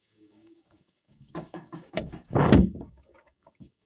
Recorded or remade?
remade